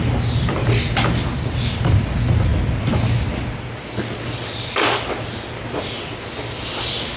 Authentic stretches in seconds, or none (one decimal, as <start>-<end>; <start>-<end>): 0.0-7.2